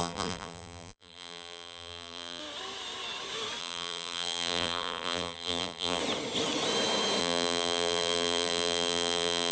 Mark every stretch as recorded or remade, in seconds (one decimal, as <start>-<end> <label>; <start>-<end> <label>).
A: 0.0-2.4 remade; 2.4-3.6 recorded; 3.6-6.0 remade; 6.0-7.2 recorded; 7.2-9.5 remade